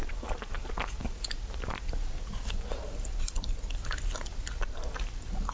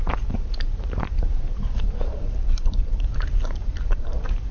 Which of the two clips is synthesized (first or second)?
second